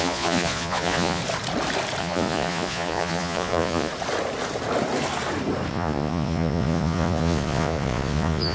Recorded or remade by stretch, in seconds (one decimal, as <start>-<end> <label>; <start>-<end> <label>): 0.0-1.2 remade; 1.2-2.0 recorded; 2.0-3.9 remade; 3.9-5.7 recorded; 5.7-8.5 remade